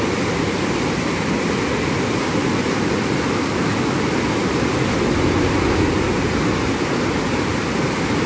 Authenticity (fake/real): real